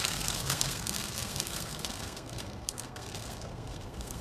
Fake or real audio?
fake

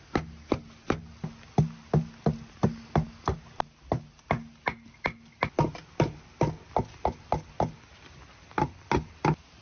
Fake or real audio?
real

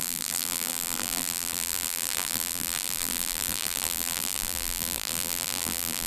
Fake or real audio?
fake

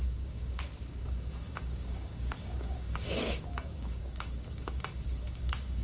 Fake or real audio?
fake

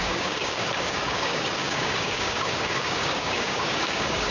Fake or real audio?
fake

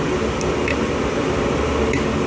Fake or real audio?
fake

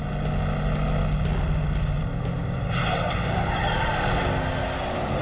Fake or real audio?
real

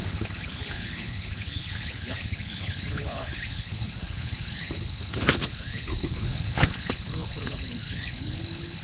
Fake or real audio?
fake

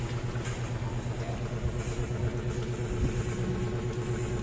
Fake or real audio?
real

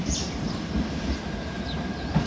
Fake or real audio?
real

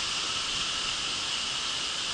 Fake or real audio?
real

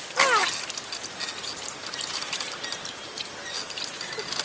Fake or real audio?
real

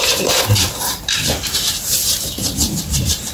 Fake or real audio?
fake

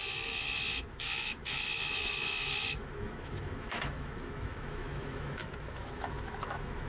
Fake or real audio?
fake